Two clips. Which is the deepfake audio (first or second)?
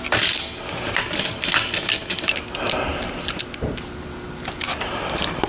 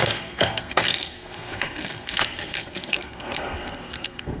second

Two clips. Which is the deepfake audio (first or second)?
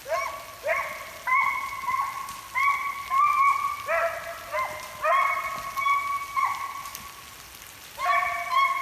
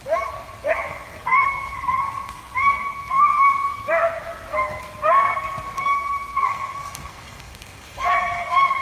second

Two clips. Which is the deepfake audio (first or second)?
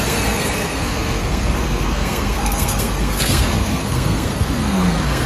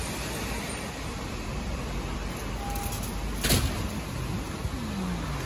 first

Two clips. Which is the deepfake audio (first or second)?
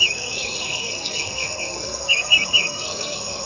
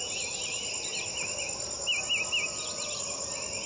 first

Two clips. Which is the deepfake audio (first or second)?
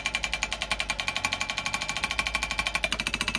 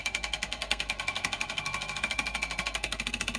second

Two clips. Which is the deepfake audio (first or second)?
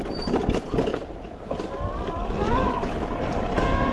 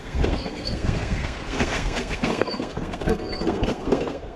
second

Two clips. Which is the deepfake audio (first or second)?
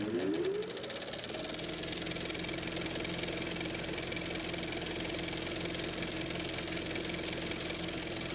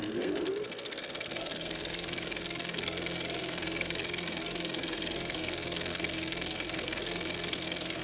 second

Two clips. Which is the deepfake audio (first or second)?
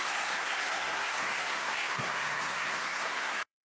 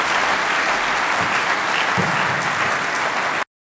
first